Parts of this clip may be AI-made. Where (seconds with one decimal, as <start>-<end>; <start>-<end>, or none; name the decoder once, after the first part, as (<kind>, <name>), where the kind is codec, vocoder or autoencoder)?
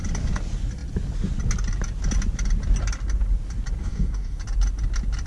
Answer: 3.8-4.4 (codec, DAC)